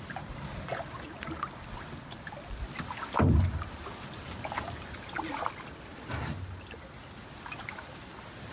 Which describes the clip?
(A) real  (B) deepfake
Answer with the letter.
A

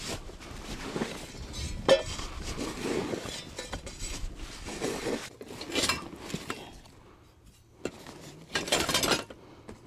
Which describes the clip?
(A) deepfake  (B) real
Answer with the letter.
B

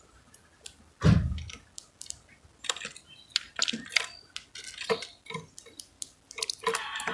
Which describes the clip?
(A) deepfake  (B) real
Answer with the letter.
B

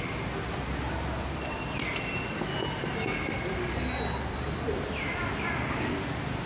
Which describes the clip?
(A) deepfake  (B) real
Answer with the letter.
B